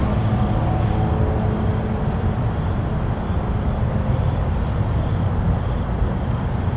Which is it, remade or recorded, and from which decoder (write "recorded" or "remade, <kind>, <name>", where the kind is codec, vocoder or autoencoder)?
recorded